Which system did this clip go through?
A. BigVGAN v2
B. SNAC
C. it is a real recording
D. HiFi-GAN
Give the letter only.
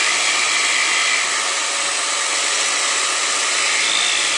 C